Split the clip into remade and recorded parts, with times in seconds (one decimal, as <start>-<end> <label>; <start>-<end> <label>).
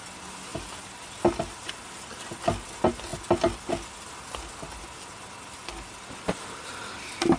0.0-7.4 recorded